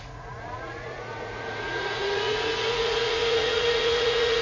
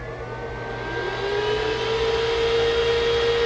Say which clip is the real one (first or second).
second